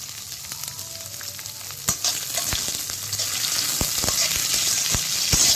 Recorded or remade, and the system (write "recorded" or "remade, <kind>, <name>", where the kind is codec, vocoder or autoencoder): recorded